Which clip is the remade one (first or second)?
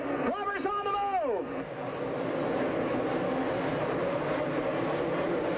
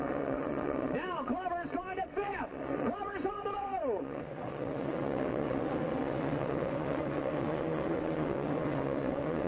second